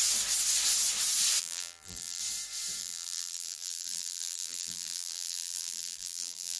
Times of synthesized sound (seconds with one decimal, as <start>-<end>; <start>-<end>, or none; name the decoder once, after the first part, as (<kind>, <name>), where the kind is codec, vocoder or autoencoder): 1.4-2.2 (vocoder, BigVGAN v2); 2.8-6.6